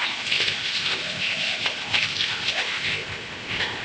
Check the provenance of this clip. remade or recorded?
remade